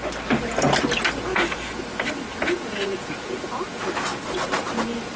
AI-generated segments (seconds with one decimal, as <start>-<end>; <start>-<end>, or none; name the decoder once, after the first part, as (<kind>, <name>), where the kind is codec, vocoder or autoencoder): 1.3-1.8 (vocoder, Vocos); 2.4-3.4